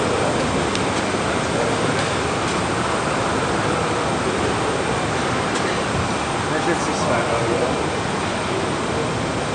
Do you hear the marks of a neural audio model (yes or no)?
no